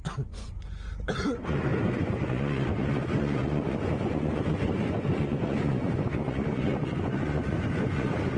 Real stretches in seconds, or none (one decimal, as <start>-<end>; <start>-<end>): none